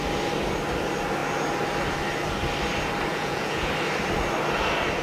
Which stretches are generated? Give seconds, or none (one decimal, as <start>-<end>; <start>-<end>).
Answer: 3.1-3.7